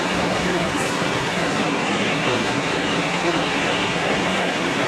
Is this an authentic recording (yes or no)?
no